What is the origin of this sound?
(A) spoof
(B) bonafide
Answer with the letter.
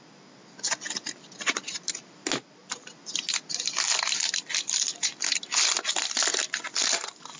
B